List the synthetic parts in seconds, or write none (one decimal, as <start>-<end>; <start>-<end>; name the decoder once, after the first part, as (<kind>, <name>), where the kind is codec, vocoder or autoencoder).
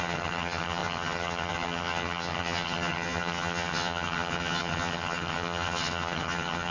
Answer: 0.0-6.7 (vocoder, HiFi-GAN)